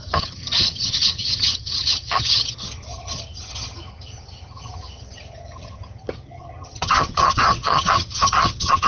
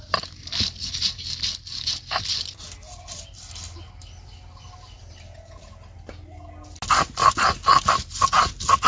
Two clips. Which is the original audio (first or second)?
second